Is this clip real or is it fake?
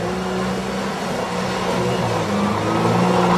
real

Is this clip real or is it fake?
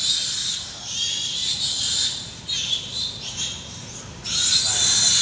real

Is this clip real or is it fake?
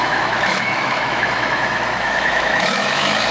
fake